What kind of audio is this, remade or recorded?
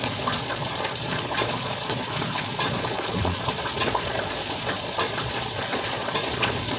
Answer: remade